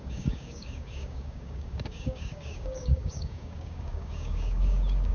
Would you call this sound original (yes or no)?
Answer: no